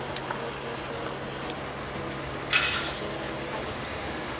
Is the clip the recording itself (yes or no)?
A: yes